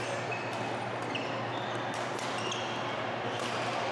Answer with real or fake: real